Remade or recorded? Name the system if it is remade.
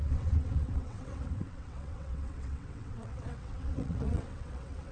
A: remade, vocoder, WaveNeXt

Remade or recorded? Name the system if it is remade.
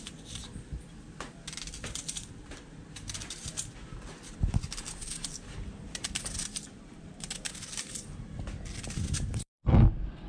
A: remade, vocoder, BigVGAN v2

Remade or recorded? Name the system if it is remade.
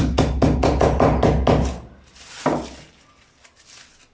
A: recorded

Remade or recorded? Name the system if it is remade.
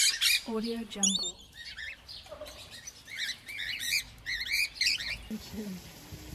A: recorded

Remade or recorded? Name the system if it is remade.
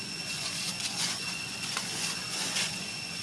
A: remade, vocoder, Vocos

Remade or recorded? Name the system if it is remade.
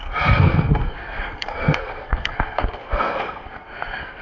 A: remade, codec, SNAC